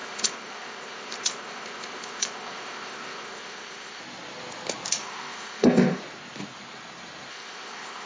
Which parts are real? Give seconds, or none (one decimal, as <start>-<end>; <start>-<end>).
4.0-5.0; 6.0-7.3